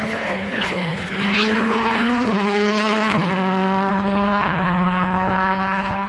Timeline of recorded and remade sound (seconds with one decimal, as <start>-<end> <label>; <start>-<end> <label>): 0.0-3.3 remade; 3.3-3.9 recorded; 3.9-6.1 remade